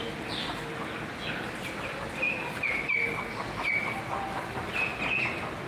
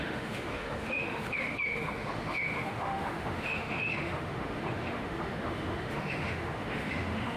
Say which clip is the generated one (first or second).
second